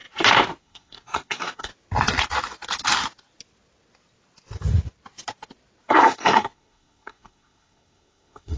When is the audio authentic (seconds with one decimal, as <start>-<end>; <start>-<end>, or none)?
0.0-0.6; 1.7-5.9